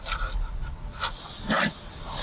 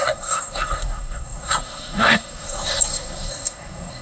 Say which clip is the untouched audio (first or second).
first